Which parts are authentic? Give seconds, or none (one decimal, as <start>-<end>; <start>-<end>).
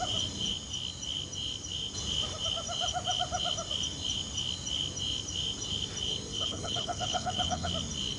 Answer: 0.0-6.3; 7.7-8.2